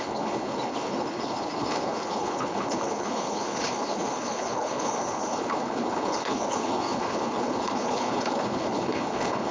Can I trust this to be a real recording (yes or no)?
no